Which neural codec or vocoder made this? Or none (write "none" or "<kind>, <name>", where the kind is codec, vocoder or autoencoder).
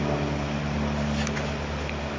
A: none